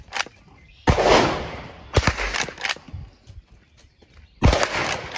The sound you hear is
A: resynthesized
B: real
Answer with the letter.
B